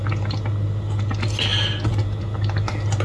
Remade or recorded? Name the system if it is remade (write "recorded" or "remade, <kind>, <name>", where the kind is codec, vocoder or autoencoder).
recorded